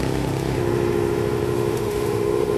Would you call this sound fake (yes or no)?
yes